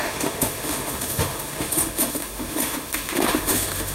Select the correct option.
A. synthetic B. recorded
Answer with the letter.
A